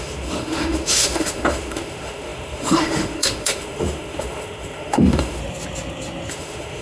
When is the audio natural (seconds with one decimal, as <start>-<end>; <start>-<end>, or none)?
5.4-6.3